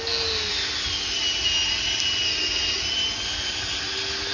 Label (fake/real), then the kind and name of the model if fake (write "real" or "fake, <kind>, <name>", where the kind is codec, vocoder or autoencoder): real